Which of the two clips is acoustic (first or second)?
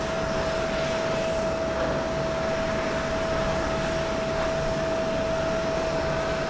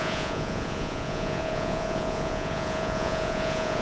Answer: first